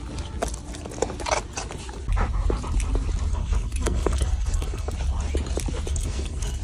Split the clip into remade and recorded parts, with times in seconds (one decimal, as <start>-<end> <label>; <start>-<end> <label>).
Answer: 0.0-3.3 recorded; 3.3-4.9 remade; 4.9-5.9 recorded; 5.9-6.6 remade